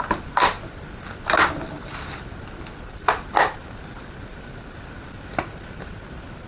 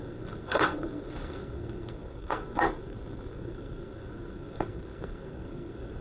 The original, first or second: first